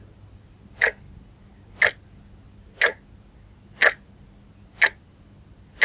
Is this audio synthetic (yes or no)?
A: no